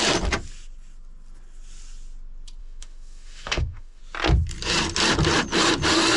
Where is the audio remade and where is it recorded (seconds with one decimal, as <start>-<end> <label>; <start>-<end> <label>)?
0.0-2.6 recorded; 2.6-4.0 remade; 4.0-6.2 recorded

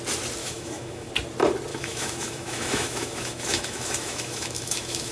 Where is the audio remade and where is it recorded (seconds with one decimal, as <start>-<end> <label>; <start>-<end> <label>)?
0.0-0.4 recorded; 0.4-1.1 remade; 1.1-1.7 recorded; 1.7-5.1 remade

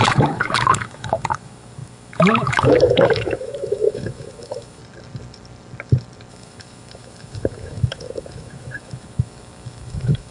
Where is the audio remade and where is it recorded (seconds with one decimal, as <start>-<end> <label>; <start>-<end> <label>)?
0.0-4.8 remade; 4.8-6.3 recorded; 6.3-10.3 remade

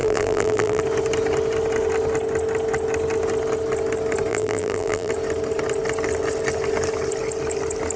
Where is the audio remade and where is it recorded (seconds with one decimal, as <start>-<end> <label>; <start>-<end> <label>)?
0.0-0.8 remade; 0.8-4.3 recorded; 4.3-5.1 remade; 5.1-8.0 recorded

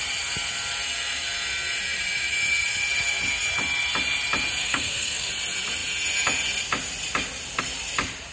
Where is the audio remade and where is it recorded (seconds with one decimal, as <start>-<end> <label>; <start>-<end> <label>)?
0.0-4.6 recorded; 4.6-5.3 remade; 5.3-8.3 recorded